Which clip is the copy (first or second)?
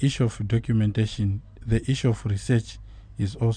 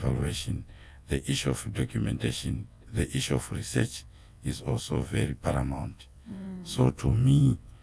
second